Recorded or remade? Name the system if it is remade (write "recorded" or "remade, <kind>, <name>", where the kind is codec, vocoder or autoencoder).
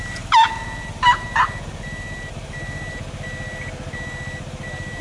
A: recorded